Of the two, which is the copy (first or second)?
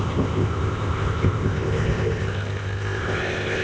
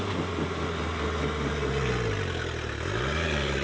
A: first